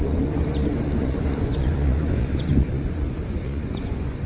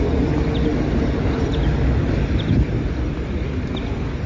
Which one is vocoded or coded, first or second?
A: first